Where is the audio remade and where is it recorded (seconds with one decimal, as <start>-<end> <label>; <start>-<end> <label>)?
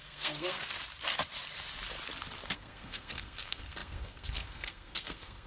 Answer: 0.0-0.6 remade; 0.6-2.5 recorded; 2.5-5.5 remade